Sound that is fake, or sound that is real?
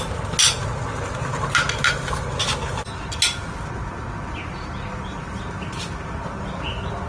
real